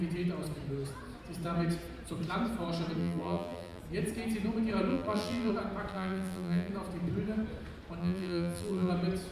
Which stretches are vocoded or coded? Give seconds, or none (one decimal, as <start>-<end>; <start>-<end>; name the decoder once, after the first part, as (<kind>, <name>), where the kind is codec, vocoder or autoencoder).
3.0-3.8 (vocoder, BigVGAN v2); 4.9-5.5; 5.9-6.7; 8.0-8.9